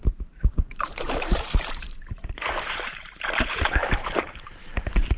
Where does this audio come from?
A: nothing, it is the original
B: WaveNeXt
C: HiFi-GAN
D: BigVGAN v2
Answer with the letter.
D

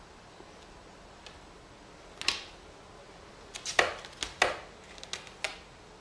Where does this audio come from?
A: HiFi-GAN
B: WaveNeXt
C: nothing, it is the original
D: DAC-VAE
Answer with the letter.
C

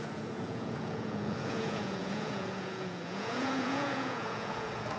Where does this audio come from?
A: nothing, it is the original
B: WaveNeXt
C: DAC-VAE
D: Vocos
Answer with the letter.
D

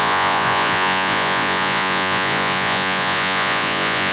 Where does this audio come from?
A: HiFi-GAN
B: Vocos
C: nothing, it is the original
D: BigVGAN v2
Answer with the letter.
B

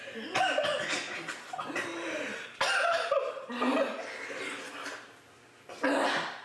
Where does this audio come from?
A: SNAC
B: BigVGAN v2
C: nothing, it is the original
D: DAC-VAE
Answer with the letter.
C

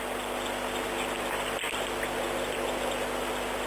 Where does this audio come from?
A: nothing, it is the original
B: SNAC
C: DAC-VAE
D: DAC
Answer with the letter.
A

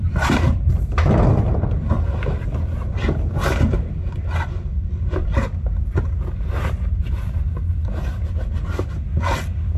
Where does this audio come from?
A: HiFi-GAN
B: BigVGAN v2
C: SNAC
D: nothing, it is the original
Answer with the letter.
D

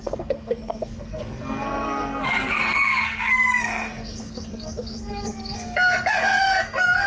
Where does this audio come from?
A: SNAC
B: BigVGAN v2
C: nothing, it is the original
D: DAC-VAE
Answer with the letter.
A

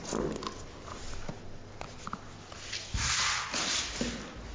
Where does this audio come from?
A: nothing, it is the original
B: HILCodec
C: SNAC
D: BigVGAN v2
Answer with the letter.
A